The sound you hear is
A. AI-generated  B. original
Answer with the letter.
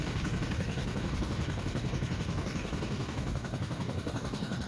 A